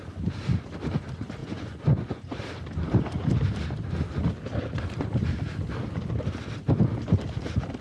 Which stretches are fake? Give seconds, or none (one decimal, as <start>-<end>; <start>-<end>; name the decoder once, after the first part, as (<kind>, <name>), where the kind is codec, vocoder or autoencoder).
1.4-2.2 (vocoder, Vocos)